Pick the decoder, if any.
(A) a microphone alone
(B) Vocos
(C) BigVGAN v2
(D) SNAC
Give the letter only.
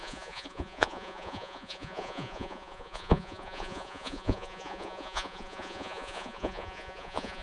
B